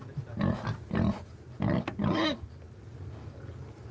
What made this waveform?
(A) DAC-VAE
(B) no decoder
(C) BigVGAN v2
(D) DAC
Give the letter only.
B